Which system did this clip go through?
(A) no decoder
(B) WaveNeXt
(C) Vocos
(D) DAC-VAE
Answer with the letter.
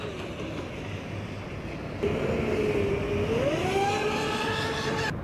A